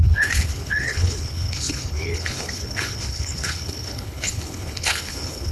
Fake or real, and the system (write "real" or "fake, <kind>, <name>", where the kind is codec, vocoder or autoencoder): fake, codec, HILCodec